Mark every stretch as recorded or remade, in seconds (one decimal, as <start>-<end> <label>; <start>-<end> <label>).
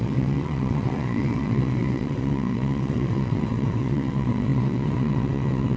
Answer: 0.0-5.8 remade